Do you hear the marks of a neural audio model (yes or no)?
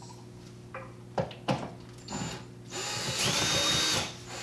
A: no